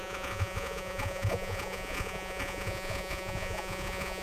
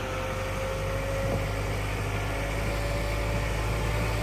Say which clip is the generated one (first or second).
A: first